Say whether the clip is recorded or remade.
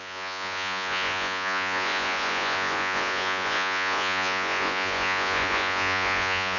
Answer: remade